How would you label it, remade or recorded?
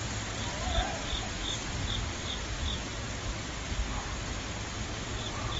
recorded